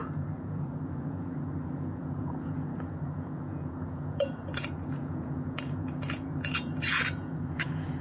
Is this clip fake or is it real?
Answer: fake